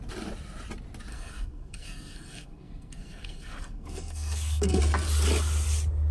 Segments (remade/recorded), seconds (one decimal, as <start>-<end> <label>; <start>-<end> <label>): 0.0-1.1 recorded; 1.1-4.8 remade; 4.8-6.1 recorded